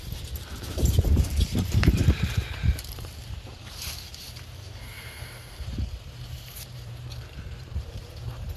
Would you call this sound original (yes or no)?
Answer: no